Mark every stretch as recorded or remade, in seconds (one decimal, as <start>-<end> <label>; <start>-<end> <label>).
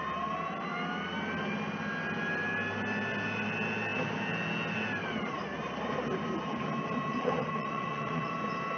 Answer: 0.0-7.1 recorded; 7.1-8.3 remade; 8.3-8.8 recorded